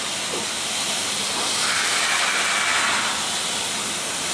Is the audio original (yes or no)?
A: yes